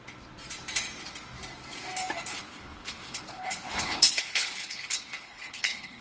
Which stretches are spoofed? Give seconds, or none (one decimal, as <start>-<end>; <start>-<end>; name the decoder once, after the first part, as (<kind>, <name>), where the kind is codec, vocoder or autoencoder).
2.3-6.0 (codec, HILCodec)